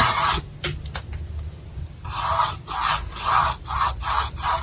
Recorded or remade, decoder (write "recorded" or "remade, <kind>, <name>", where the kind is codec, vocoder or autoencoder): recorded